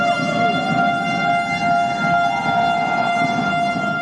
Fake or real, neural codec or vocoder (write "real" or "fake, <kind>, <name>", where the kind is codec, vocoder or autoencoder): real